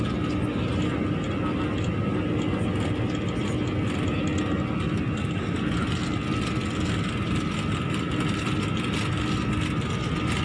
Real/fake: real